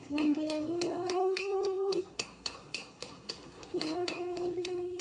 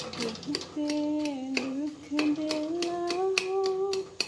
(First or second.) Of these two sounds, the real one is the second